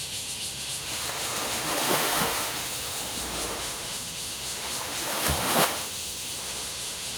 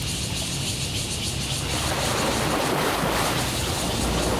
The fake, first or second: first